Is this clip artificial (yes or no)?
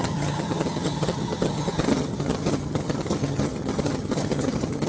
yes